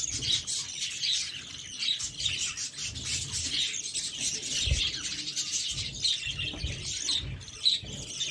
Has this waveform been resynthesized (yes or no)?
no